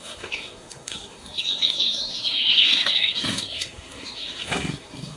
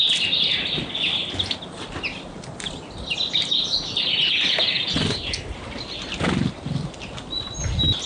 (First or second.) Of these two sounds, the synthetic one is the first